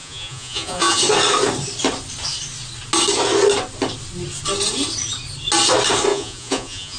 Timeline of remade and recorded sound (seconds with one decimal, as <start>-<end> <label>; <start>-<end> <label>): 0.0-1.0 remade; 1.0-6.1 recorded; 6.1-7.0 remade